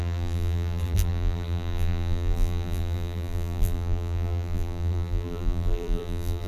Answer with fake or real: fake